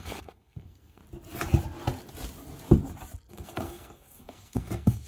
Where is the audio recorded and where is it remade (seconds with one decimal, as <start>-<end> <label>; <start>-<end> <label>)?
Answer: 0.0-1.0 remade; 1.0-3.3 recorded; 3.3-5.1 remade